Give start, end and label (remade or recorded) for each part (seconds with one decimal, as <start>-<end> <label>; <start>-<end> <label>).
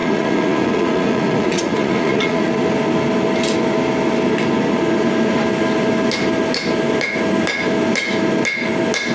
0.0-2.5 remade; 2.5-9.1 recorded